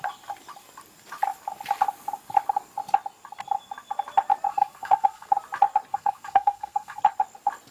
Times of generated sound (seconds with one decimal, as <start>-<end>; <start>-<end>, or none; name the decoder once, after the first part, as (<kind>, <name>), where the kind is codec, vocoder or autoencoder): 4.5-5.3 (codec, SNAC); 5.9-7.0